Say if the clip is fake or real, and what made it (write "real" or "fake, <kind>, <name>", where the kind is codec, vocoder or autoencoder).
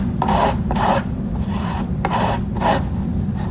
real